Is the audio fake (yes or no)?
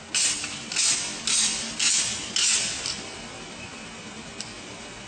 no